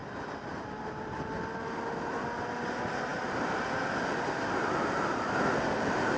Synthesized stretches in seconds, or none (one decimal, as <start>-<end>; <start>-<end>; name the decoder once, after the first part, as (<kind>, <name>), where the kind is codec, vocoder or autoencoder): none